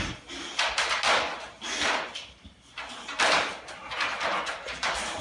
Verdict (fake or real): real